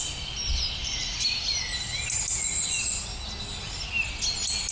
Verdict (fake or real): real